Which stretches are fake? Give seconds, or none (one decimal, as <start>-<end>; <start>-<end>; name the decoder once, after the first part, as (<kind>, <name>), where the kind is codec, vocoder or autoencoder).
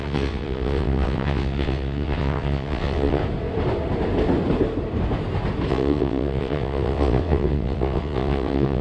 0.0-3.2 (vocoder, WaveNeXt); 5.7-8.8